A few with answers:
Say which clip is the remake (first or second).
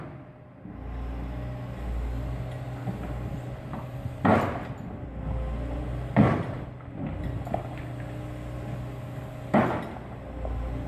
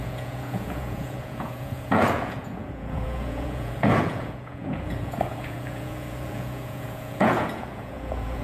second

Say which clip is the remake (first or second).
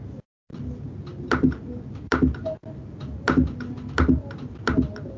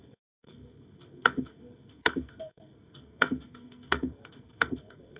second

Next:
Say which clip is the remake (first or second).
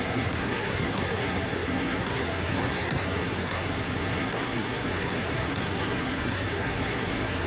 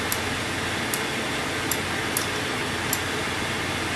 first